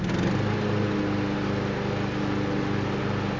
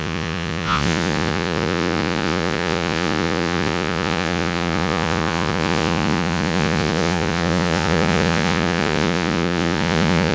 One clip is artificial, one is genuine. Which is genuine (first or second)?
first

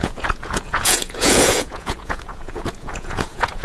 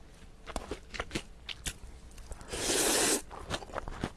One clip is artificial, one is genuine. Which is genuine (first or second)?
second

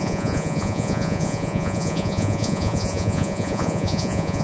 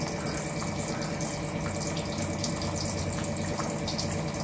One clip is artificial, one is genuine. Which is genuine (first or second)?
second